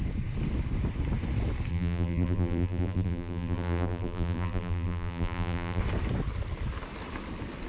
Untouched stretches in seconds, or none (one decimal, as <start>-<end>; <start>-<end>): 0.0-1.7; 5.8-7.7